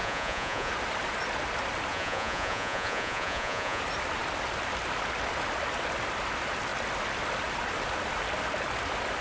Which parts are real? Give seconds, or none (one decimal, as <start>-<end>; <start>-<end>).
0.7-1.9; 3.8-9.2